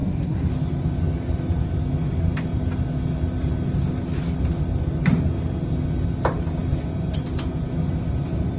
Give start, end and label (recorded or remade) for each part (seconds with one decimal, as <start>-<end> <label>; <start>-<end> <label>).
0.0-0.5 remade; 0.5-8.6 recorded